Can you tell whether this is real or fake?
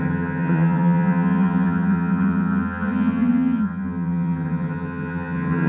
fake